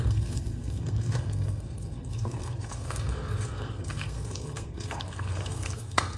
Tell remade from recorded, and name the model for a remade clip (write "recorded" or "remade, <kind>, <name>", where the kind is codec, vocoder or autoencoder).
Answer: remade, codec, SNAC